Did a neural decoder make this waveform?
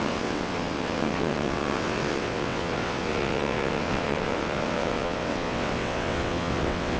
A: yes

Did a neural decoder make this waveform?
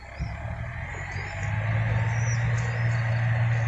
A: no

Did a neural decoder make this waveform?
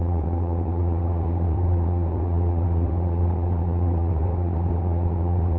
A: yes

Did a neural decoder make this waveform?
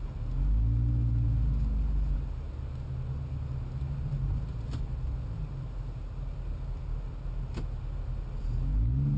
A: no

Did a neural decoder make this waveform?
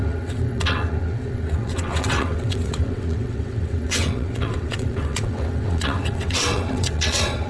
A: yes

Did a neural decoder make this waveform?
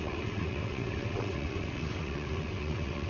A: yes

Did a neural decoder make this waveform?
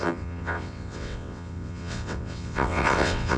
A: yes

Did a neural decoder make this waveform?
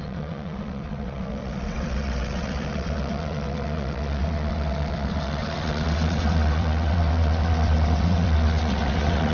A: yes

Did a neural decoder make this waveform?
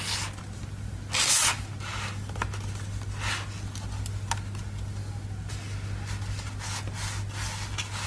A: no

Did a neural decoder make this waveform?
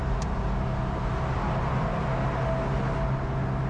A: no